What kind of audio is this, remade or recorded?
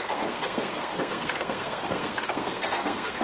remade